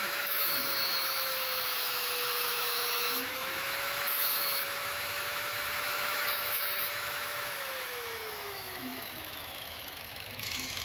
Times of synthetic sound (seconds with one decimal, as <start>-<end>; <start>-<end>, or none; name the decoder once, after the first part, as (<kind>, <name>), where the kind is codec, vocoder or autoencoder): 0.0-10.8 (autoencoder, DAC-VAE)